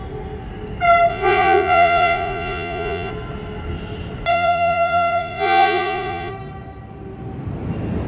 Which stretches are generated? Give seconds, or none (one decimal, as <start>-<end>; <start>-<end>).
1.1-3.1; 4.3-6.3